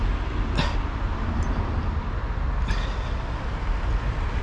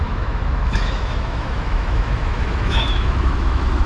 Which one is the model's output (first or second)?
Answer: second